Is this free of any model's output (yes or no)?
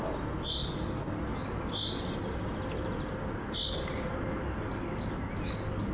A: yes